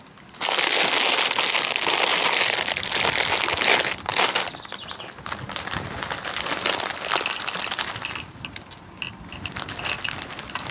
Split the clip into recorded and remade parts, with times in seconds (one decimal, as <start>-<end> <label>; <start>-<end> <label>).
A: 0.0-10.7 recorded